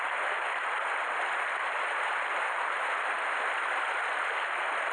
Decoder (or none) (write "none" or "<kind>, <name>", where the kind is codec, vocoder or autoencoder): none